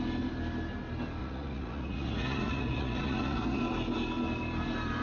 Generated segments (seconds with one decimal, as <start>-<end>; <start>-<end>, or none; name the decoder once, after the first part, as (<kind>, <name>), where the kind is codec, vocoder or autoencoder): 1.2-3.6 (vocoder, Vocos)